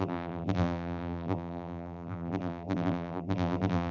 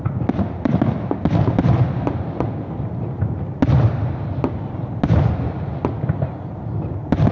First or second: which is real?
second